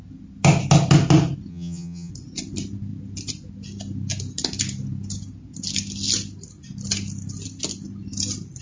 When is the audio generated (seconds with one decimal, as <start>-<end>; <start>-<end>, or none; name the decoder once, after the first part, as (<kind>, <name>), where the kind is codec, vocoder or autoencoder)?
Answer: 1.5-2.1 (vocoder, HiFi-GAN)

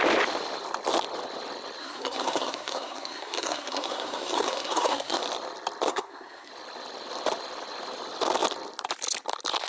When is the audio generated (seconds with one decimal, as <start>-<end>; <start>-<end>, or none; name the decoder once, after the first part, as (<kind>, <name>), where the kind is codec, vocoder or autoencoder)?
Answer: 1.8-5.2 (codec, SNAC); 5.9-6.5

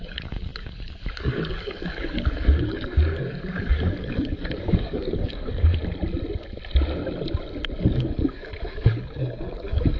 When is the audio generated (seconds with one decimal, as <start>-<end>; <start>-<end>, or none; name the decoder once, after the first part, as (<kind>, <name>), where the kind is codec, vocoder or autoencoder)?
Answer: 0.0-5.8 (codec, DAC); 7.8-10.0

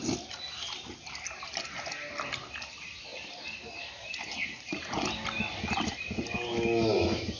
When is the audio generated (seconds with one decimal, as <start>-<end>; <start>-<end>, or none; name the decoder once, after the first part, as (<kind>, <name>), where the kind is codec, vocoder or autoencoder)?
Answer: none

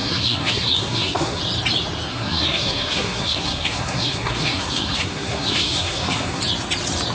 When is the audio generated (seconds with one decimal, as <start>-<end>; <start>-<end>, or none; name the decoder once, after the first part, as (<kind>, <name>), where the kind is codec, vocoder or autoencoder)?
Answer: 0.0-1.4 (codec, SNAC); 2.1-6.4

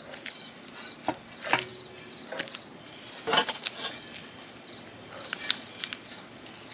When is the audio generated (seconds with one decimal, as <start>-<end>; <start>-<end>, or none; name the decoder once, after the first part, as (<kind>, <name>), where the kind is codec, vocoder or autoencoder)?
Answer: none